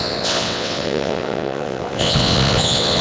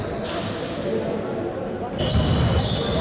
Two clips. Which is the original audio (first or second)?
second